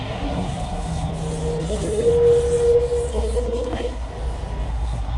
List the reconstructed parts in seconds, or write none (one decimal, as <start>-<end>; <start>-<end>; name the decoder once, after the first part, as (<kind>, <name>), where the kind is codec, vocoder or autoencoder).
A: 0.0-1.1 (codec, SNAC); 1.6-2.1; 3.1-4.1; 4.7-5.2